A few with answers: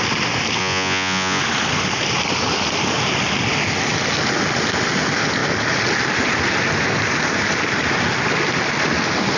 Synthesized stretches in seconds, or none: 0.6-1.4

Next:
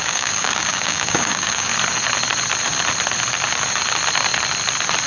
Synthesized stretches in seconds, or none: 0.0-1.7

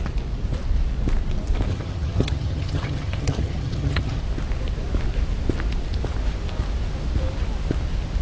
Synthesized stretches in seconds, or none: 1.7-4.2

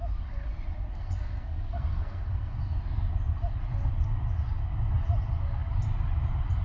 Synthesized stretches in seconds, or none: 0.9-2.5

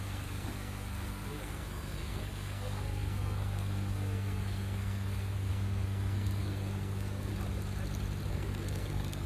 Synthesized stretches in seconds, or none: 0.0-7.3; 8.3-9.3

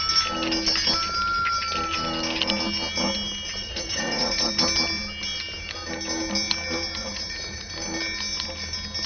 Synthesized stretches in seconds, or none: 3.6-4.5; 7.0-7.7

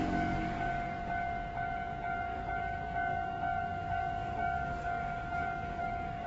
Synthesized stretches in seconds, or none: 0.0-0.7; 2.2-6.3